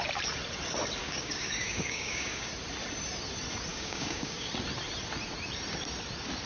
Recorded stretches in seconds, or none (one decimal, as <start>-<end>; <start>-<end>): 0.0-1.0; 2.5-3.7; 4.5-6.5